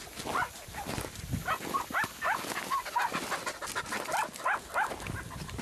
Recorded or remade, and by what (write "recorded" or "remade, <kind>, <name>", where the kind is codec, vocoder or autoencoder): recorded